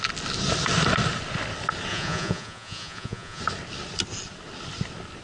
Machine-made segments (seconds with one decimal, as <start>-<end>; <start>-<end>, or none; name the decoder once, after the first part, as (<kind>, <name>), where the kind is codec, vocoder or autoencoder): 1.9-3.4 (vocoder, Vocos)